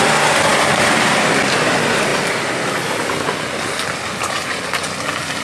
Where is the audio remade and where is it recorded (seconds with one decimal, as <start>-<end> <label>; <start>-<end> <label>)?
0.0-5.4 recorded

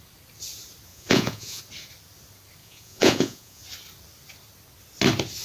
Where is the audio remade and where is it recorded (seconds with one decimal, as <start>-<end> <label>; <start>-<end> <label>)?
0.0-0.9 recorded; 0.9-1.6 remade; 1.6-2.6 recorded; 2.6-3.6 remade; 3.6-5.4 recorded

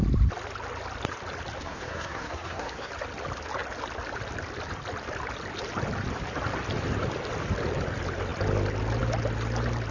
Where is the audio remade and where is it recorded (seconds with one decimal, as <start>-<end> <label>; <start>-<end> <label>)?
0.0-1.6 recorded; 1.6-2.9 remade; 2.9-9.9 recorded

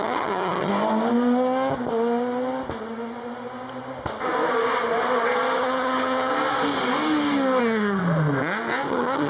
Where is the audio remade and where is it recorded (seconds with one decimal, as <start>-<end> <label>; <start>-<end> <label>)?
0.0-0.7 remade; 0.7-5.6 recorded; 5.6-6.3 remade; 6.3-7.6 recorded; 7.6-8.0 remade; 8.0-8.9 recorded; 8.9-9.3 remade

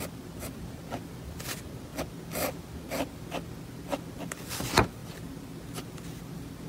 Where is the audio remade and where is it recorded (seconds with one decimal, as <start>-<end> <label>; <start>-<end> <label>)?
0.0-6.7 recorded

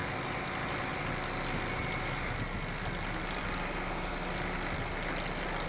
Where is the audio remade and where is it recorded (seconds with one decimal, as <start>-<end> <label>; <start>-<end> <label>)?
0.0-5.7 recorded